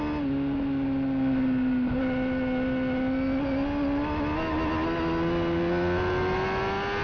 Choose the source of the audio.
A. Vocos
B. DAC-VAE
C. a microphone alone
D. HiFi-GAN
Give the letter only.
C